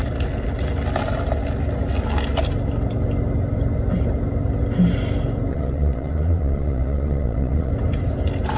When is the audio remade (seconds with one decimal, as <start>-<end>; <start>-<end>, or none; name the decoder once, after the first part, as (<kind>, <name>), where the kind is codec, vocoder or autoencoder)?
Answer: 5.5-7.7 (vocoder, Vocos)